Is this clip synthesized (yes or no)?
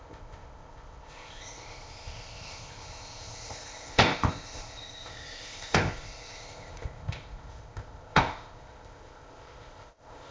yes